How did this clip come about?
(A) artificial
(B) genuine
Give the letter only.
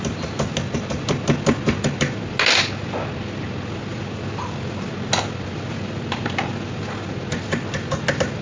B